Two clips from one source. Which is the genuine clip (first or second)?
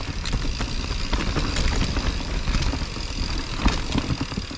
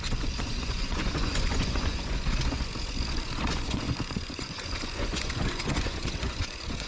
first